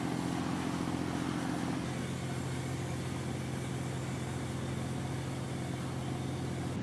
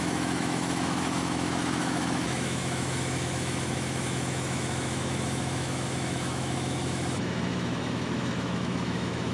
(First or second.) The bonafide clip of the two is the first